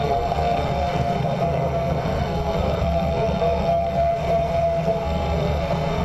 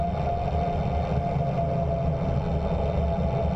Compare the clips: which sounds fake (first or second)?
first